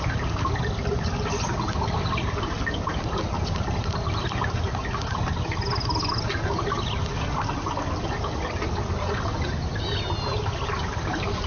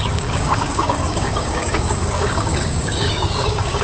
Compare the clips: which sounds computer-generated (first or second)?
second